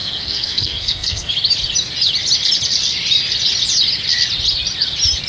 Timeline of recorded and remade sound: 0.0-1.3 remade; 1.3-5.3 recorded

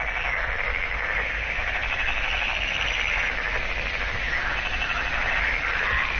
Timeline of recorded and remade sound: 0.0-6.2 recorded

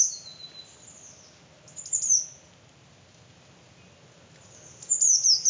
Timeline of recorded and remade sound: 0.0-5.5 recorded

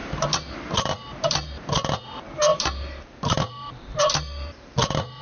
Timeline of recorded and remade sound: 0.0-5.2 remade

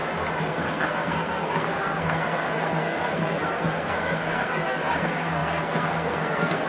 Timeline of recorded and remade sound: 0.0-0.5 recorded; 0.5-6.7 remade

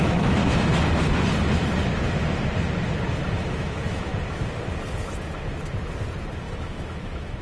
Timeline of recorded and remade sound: 0.0-0.4 remade; 0.4-3.2 recorded; 3.2-4.1 remade; 4.1-6.4 recorded; 6.4-7.4 remade

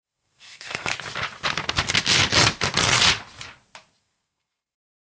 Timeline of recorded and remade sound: 0.0-0.9 remade; 0.9-4.0 recorded; 4.0-5.1 remade